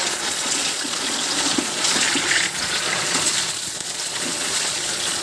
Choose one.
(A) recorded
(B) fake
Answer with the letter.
B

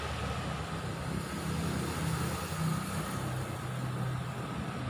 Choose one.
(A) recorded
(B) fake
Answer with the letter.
A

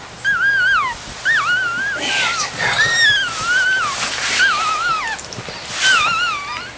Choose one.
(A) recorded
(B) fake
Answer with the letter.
A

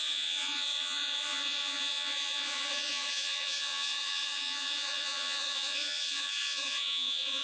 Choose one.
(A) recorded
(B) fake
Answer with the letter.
B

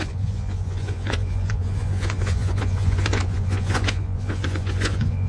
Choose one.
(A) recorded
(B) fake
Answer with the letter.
B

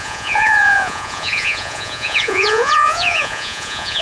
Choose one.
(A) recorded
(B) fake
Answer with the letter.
B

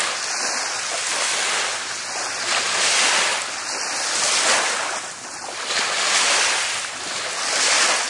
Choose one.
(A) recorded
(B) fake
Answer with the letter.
A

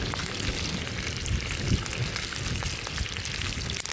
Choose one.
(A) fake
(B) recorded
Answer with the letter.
B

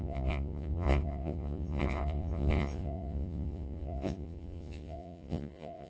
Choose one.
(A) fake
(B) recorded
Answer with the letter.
A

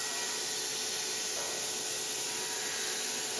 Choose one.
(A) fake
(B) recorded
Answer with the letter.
B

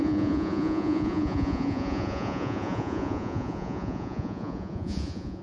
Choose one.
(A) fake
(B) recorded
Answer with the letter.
A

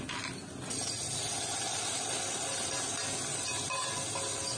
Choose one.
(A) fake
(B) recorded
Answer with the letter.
B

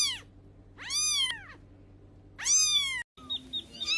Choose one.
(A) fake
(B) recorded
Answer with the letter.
B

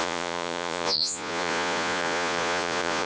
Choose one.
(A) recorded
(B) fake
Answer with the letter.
B